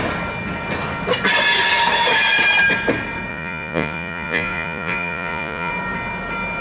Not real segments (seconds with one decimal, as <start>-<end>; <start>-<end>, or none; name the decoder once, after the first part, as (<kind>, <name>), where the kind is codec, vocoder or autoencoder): 3.3-5.7 (vocoder, Vocos)